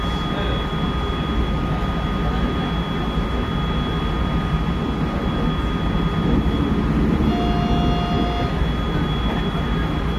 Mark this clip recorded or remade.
recorded